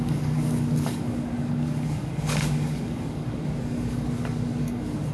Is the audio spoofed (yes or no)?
yes